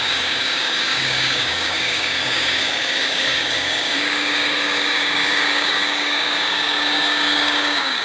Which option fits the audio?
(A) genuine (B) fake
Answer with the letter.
B